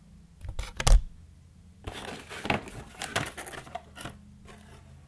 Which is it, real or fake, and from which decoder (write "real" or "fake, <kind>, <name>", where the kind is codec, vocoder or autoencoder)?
real